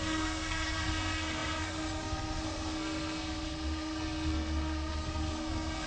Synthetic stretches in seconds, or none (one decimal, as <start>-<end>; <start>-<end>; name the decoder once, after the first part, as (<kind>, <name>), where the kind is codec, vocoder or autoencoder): 0.0-5.9 (codec, SNAC)